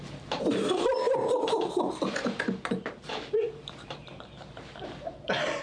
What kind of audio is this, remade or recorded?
remade